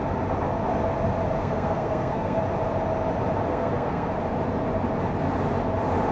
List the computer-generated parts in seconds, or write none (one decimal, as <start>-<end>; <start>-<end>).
1.4-2.4; 3.5-4.1